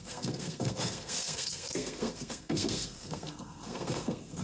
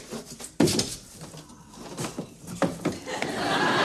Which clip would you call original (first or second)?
second